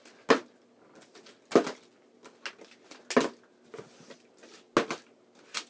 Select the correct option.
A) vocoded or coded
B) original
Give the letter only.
B